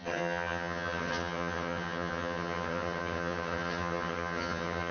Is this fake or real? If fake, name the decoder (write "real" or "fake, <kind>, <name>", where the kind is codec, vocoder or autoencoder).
fake, vocoder, HiFi-GAN